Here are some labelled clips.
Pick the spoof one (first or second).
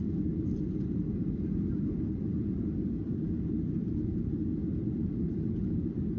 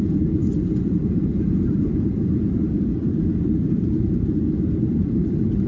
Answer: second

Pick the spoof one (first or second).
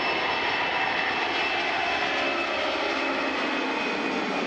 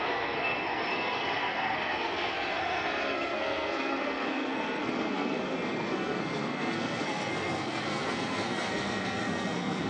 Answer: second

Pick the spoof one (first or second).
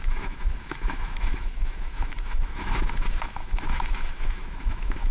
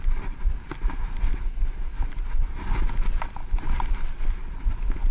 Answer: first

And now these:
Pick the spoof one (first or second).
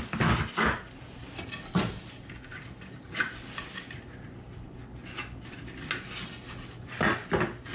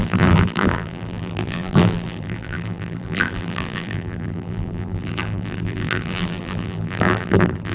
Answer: second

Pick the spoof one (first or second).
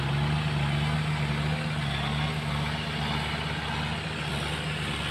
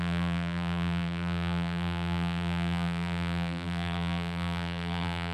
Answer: second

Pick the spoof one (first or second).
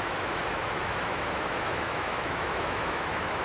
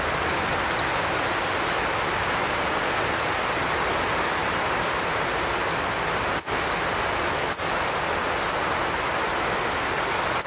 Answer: first